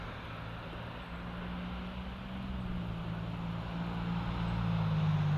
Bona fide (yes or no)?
yes